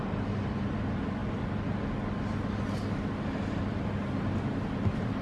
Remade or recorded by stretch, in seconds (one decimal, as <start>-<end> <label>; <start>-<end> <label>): 0.0-5.2 recorded